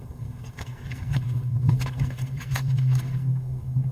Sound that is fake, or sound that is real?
fake